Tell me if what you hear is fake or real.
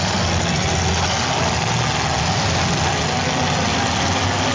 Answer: real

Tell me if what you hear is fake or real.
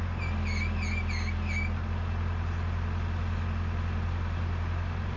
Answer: real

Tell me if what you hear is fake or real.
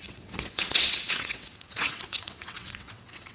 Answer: fake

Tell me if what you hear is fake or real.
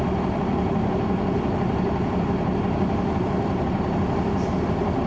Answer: real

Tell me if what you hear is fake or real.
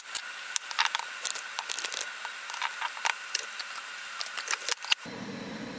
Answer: real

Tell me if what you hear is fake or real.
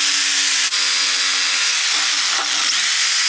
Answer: real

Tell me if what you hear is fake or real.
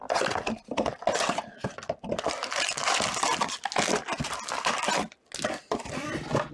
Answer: real